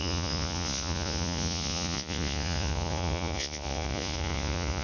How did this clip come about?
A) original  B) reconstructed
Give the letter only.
B